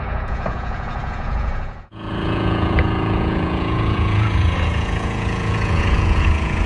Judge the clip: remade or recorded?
remade